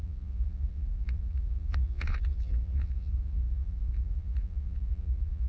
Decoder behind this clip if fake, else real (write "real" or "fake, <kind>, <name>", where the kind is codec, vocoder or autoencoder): fake, vocoder, Vocos